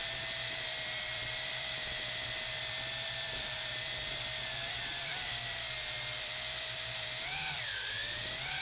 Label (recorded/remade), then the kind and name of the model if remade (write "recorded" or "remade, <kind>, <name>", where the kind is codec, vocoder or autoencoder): remade, vocoder, BigVGAN v2